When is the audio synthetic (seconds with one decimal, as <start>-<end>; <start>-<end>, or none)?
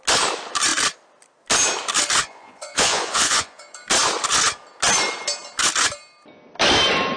2.2-3.6